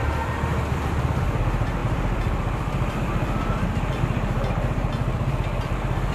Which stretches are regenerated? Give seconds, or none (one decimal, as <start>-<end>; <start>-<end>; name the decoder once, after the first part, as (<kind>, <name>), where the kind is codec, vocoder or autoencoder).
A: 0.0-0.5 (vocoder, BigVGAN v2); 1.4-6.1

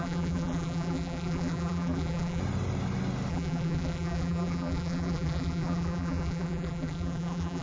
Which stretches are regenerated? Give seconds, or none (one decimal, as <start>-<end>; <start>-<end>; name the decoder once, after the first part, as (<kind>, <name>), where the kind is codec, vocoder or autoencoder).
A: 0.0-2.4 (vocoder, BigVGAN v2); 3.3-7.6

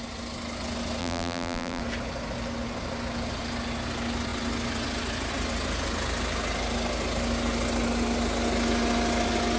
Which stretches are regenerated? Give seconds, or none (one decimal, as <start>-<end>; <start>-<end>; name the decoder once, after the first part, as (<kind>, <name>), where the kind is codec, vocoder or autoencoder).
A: 1.0-1.8 (vocoder, BigVGAN v2)

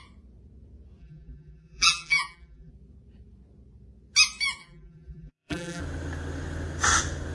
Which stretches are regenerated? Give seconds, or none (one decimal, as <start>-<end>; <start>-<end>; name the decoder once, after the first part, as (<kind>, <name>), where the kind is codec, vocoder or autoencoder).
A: 1.0-2.7 (vocoder, BigVGAN v2); 4.6-5.8

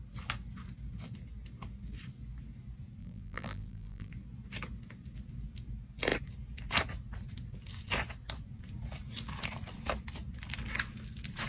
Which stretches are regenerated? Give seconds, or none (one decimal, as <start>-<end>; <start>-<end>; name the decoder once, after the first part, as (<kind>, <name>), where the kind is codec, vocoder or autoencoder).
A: 3.0-4.1 (vocoder, BigVGAN v2)

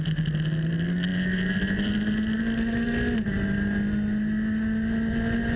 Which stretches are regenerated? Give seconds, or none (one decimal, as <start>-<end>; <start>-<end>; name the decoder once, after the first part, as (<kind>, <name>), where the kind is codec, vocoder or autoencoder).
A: none

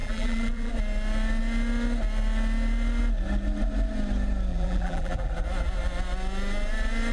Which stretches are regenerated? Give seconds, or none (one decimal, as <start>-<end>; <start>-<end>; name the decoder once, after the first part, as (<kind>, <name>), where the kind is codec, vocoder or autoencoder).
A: 0.0-0.7 (vocoder, BigVGAN v2); 4.5-5.3

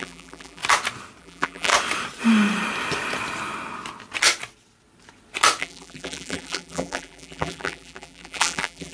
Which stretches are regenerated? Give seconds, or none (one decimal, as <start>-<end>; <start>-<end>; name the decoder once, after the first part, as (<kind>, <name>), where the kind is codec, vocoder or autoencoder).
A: 0.0-0.6 (vocoder, BigVGAN v2); 1.2-1.7; 5.6-8.9